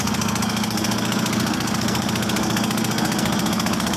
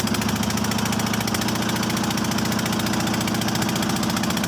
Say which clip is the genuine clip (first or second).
second